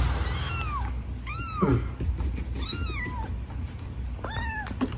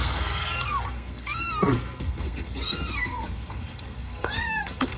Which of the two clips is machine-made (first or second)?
second